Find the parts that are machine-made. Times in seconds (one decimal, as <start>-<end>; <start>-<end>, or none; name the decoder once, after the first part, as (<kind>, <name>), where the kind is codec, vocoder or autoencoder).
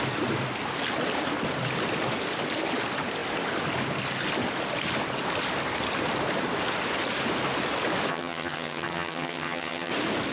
8.1-9.9 (vocoder, HiFi-GAN)